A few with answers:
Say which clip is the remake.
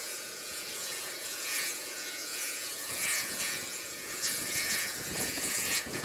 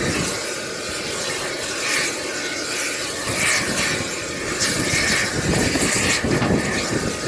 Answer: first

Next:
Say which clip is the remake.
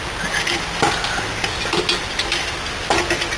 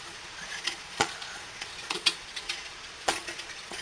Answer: second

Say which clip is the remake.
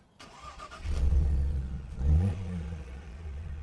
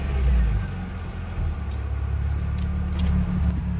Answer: first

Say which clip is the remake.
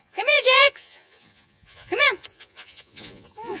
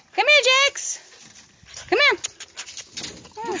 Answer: first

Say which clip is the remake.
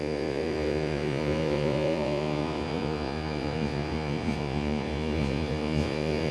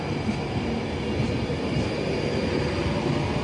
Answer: first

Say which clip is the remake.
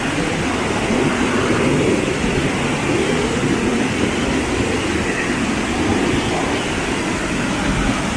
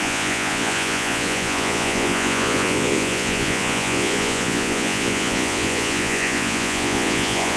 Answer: second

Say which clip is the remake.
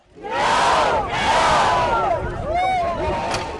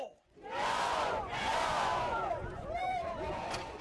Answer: second